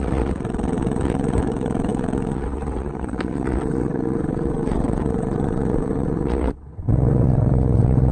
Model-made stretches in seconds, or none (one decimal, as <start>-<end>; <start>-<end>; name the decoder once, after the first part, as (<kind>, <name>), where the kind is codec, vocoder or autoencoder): 0.0-8.1 (vocoder, WaveNeXt)